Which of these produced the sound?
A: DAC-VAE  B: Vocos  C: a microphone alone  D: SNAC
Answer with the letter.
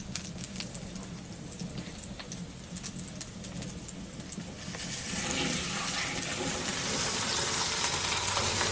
C